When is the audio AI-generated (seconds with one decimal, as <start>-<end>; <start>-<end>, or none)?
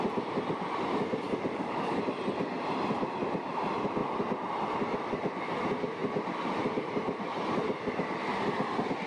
1.5-2.0